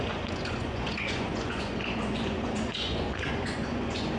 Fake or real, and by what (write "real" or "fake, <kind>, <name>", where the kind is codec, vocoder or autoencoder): fake, vocoder, Vocos